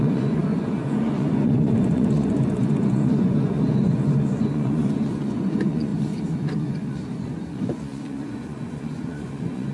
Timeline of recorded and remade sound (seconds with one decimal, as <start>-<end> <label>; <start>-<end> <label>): 0.0-9.7 remade